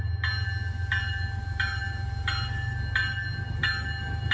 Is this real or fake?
real